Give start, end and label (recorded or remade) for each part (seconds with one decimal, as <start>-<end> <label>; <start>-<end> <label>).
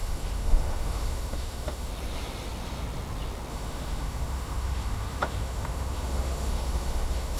0.0-1.9 remade; 1.9-3.5 recorded; 3.5-7.4 remade